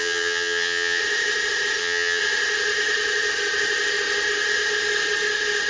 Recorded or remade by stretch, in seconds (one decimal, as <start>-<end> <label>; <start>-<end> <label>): 0.0-1.0 remade; 1.0-1.8 recorded; 1.8-2.2 remade; 2.2-5.7 recorded